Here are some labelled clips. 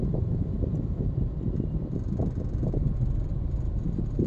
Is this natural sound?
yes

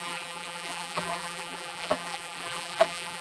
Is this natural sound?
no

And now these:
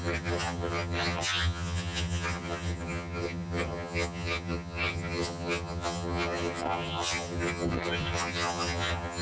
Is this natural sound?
no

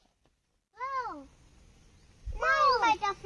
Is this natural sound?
yes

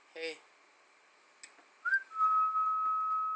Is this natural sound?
yes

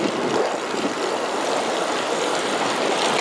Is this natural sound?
no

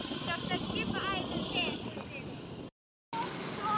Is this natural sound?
yes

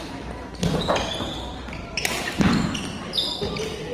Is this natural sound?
yes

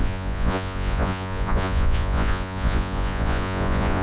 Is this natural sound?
no